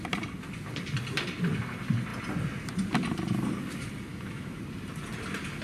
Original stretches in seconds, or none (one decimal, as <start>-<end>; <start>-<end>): 0.0-4.1; 4.6-5.6

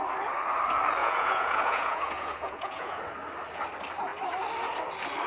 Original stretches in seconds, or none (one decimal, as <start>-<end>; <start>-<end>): 0.0-1.0; 3.0-5.3